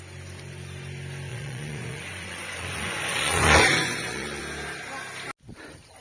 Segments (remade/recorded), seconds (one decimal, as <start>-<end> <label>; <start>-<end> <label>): 0.0-1.3 recorded; 1.3-4.4 remade; 4.4-6.0 recorded